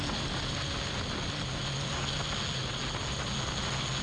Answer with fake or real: real